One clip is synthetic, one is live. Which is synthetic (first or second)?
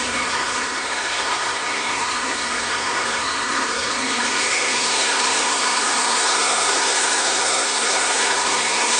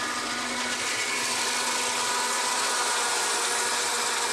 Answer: first